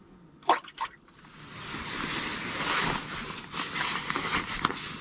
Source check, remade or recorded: recorded